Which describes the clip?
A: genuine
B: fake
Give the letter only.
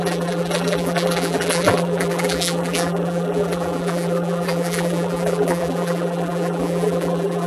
B